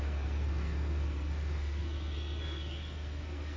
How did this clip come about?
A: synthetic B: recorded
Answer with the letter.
A